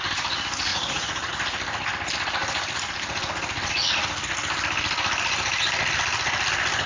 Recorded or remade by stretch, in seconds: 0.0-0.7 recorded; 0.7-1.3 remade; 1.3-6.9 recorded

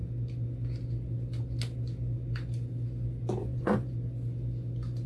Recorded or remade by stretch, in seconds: 0.0-3.4 recorded; 3.4-3.9 remade; 3.9-5.1 recorded

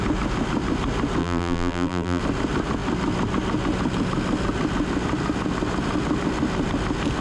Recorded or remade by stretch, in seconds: 0.0-1.2 recorded; 1.2-2.2 remade; 2.2-7.2 recorded